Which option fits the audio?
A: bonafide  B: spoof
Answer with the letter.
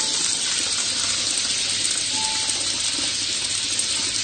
A